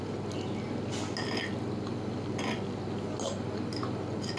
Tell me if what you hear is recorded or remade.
recorded